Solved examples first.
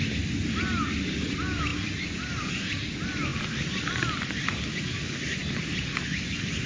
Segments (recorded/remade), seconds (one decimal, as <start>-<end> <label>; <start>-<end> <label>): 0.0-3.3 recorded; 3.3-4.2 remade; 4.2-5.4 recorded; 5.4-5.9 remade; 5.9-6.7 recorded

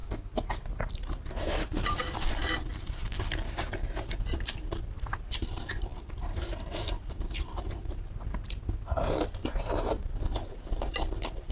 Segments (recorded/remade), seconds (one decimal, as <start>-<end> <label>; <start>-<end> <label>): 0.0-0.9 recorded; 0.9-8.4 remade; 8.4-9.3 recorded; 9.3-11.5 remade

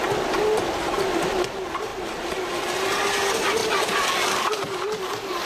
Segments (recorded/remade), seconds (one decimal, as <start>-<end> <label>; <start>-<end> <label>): 0.0-5.5 recorded

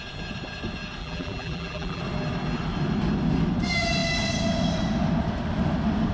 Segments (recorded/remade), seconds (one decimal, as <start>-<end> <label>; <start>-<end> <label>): 0.0-1.0 recorded; 1.0-2.0 remade; 2.0-6.1 recorded

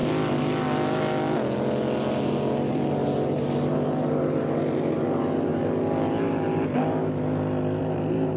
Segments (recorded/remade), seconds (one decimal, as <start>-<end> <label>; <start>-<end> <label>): 0.0-2.7 recorded; 2.7-5.5 remade; 5.5-7.8 recorded; 7.8-8.4 remade

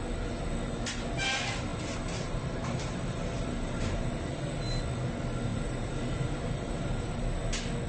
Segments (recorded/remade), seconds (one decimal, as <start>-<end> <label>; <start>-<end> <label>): 0.0-1.7 recorded; 1.7-4.5 remade; 4.5-5.5 recorded; 5.5-7.2 remade; 7.2-7.9 recorded

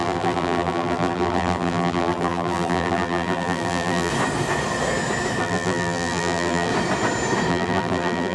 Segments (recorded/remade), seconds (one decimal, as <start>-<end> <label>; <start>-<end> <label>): 0.0-4.1 remade; 4.1-5.4 recorded; 5.4-6.7 remade; 6.7-7.5 recorded; 7.5-8.3 remade

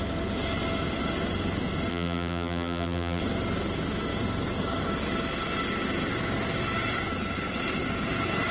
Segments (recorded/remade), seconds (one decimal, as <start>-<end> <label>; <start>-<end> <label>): 0.0-1.9 recorded; 1.9-3.2 remade; 3.2-8.5 recorded